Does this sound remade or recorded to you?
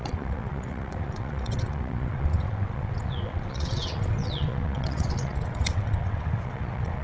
remade